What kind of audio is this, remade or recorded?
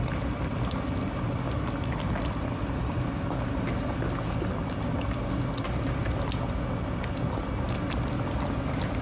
recorded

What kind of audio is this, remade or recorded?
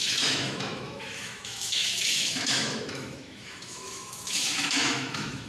remade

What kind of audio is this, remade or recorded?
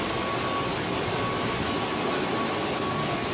recorded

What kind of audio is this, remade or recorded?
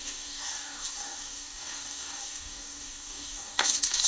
remade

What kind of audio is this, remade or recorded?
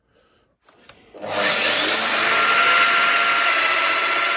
recorded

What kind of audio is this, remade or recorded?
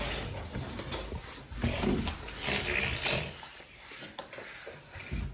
recorded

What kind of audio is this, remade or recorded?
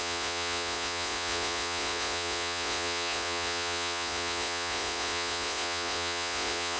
remade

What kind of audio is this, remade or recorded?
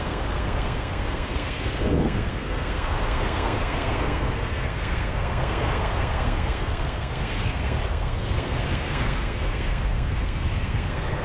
remade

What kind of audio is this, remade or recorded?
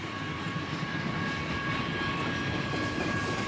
recorded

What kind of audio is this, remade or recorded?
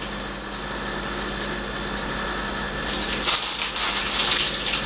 recorded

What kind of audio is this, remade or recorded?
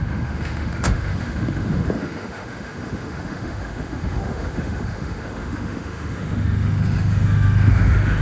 remade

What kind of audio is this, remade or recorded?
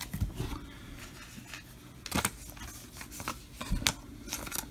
recorded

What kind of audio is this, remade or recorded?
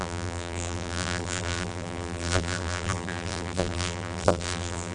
remade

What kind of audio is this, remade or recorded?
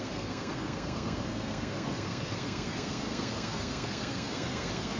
remade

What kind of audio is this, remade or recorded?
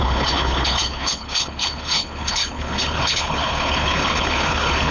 remade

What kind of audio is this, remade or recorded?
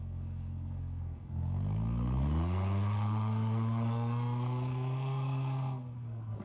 remade